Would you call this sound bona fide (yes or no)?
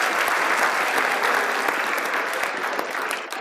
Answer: yes